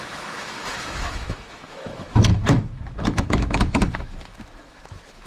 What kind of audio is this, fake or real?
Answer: fake